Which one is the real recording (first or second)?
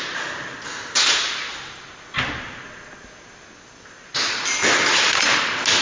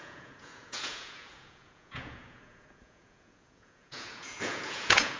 first